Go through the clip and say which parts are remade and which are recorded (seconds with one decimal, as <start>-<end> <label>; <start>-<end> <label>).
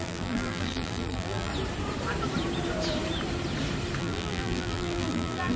0.0-1.5 remade; 1.5-4.0 recorded; 4.0-5.6 remade